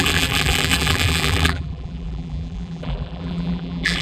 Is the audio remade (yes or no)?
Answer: yes